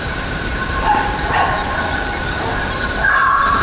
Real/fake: fake